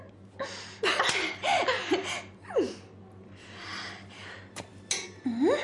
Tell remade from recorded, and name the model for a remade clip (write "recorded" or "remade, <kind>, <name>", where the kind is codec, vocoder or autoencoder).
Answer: recorded